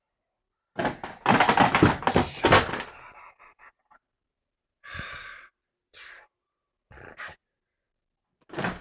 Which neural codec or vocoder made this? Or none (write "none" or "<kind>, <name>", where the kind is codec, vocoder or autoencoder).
none